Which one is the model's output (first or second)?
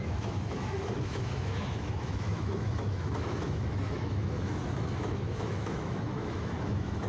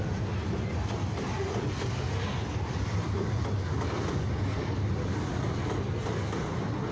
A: first